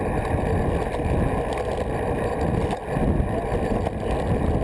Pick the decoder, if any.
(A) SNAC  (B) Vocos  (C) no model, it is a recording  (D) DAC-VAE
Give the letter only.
C